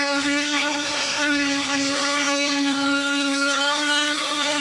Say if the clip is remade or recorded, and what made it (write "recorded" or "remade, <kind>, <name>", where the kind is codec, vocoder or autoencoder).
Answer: remade, codec, SNAC